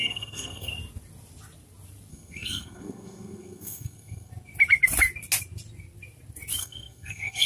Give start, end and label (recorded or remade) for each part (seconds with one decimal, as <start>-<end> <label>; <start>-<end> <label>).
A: 0.0-0.7 remade; 0.7-2.1 recorded; 2.1-4.3 remade; 4.3-6.6 recorded; 6.6-7.5 remade